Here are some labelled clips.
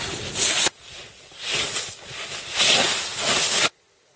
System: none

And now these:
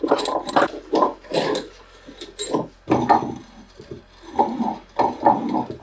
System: none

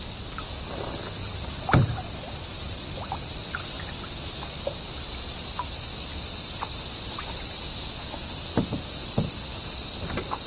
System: none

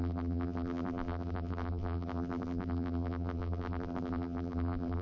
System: vocoder, BigVGAN v2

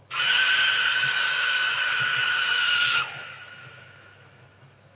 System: autoencoder, DAC-VAE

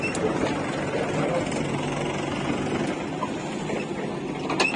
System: none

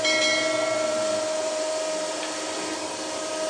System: vocoder, BigVGAN v2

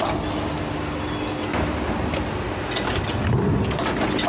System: none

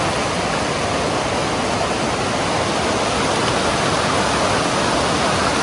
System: none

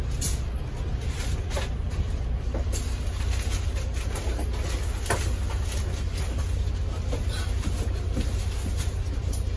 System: none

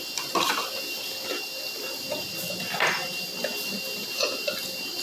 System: none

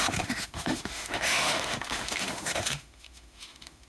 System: autoencoder, DAC-VAE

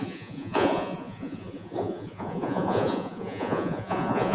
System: vocoder, Vocos